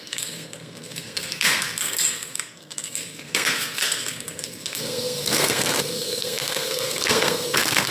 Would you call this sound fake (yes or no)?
yes